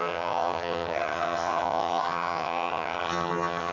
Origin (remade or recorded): remade